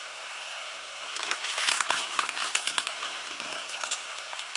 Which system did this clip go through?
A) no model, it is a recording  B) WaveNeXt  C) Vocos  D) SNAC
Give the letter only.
D